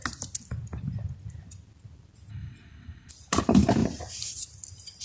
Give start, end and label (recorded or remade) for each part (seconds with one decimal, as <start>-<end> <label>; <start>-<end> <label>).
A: 0.0-2.3 recorded; 2.3-3.1 remade; 3.1-5.0 recorded